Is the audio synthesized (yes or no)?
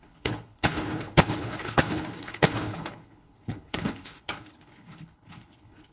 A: yes